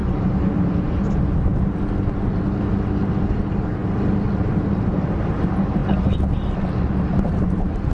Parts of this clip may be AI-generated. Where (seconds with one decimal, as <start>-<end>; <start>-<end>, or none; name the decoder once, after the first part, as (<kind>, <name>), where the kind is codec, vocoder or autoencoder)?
0.0-1.5 (vocoder, BigVGAN v2); 3.3-3.8; 4.8-5.8; 7.0-7.9